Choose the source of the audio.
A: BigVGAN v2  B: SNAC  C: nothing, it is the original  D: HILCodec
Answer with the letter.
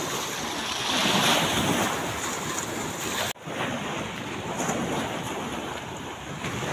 C